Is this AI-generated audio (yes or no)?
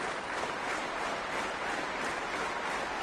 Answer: yes